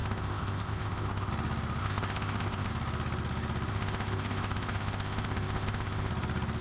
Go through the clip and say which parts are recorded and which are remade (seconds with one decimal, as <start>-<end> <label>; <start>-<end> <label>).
0.0-1.3 remade; 1.3-1.8 recorded; 1.8-2.7 remade; 2.7-3.7 recorded; 3.7-6.1 remade; 6.1-6.6 recorded

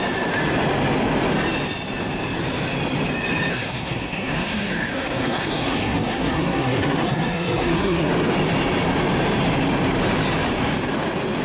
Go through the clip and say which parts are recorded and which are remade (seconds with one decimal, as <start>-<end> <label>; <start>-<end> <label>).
0.0-3.5 recorded; 3.5-8.1 remade; 8.1-11.4 recorded

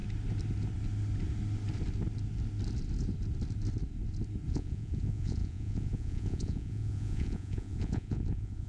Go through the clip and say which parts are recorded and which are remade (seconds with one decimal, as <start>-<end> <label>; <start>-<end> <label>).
0.0-4.5 recorded; 4.5-8.7 remade

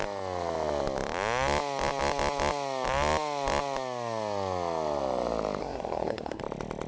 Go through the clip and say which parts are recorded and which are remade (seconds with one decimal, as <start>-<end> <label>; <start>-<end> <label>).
0.0-5.6 recorded; 5.6-6.4 remade; 6.4-6.9 recorded